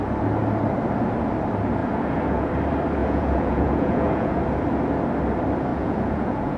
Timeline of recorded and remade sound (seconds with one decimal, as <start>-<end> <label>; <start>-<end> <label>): 0.0-1.8 recorded; 1.8-2.5 remade; 2.5-3.0 recorded; 3.0-4.3 remade; 4.3-5.7 recorded; 5.7-6.6 remade